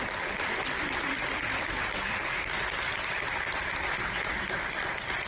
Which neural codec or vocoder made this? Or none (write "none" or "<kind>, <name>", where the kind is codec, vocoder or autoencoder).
none